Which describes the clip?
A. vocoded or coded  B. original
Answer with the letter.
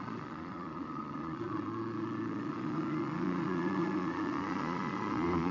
A